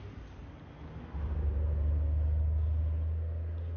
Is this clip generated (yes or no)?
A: no